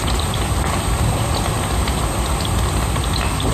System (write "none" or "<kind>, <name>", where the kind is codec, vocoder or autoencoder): none